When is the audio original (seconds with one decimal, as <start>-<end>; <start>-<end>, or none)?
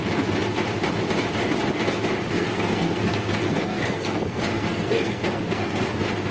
0.0-2.3; 5.8-6.3